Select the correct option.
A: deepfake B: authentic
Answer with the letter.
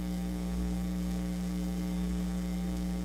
A